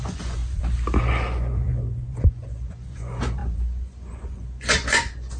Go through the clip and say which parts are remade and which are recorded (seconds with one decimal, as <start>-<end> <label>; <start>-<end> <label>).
0.0-0.4 remade; 0.4-1.0 recorded; 1.0-5.4 remade

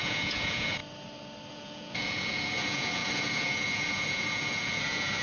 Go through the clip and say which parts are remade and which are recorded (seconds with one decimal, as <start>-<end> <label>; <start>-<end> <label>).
0.0-0.8 remade; 0.8-1.5 recorded; 1.5-5.2 remade

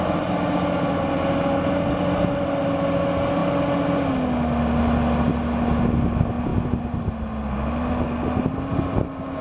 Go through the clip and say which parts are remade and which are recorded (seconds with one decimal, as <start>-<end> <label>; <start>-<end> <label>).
0.0-9.4 recorded

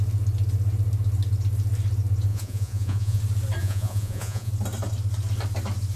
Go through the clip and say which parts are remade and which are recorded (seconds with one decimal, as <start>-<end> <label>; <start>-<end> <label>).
0.0-2.3 recorded; 2.3-3.2 remade; 3.2-3.6 recorded; 3.6-4.5 remade; 4.5-6.0 recorded

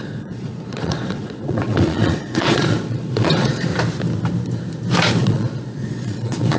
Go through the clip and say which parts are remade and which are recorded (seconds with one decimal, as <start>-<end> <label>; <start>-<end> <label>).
0.0-3.7 remade; 3.7-5.2 recorded; 5.2-6.6 remade

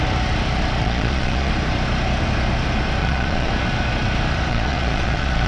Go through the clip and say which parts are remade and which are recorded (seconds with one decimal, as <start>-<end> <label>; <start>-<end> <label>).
0.0-0.8 recorded; 0.8-1.5 remade; 1.5-3.0 recorded; 3.0-3.5 remade; 3.5-4.5 recorded; 4.5-5.5 remade

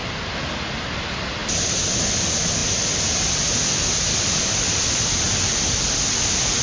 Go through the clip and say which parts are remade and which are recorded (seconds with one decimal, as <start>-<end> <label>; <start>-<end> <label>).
0.0-6.6 recorded

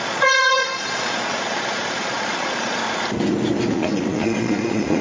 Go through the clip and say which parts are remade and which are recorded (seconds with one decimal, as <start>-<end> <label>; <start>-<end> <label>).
0.0-2.8 remade; 2.8-3.7 recorded; 3.7-5.0 remade